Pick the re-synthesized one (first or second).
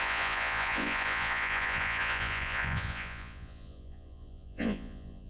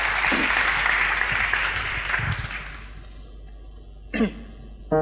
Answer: first